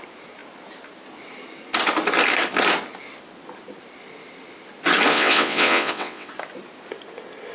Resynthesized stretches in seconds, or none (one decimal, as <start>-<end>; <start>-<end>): 5.1-6.3